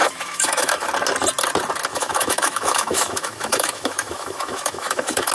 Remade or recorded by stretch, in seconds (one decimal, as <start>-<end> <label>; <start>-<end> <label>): 0.0-0.9 remade; 0.9-1.9 recorded; 1.9-5.3 remade